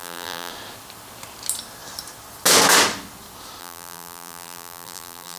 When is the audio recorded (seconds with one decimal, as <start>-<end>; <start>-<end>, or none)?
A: 0.5-3.6